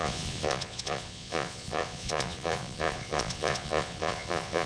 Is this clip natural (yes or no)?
no